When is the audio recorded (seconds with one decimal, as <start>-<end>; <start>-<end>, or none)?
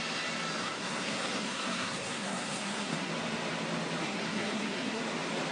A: 0.0-0.6; 3.1-4.0; 5.0-5.5